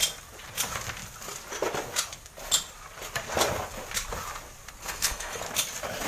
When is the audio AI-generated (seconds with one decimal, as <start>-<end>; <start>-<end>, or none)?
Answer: 4.8-5.4